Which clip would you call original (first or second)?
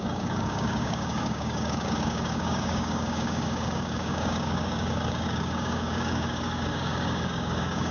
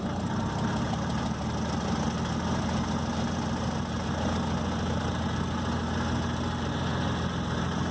second